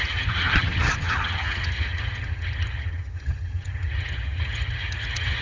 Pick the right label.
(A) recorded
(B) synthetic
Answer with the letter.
B